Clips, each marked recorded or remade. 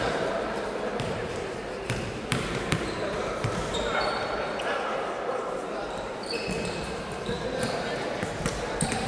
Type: remade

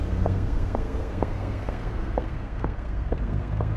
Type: remade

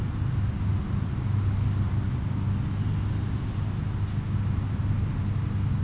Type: recorded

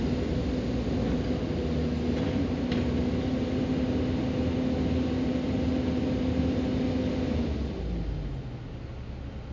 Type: recorded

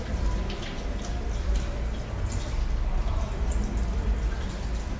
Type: recorded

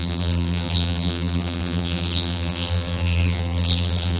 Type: remade